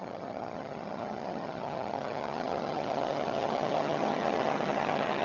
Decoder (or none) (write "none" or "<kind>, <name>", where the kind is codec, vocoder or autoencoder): vocoder, HiFi-GAN